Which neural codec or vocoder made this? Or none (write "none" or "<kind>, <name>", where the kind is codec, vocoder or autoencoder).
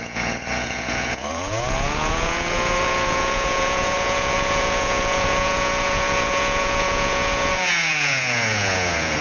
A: vocoder, Vocos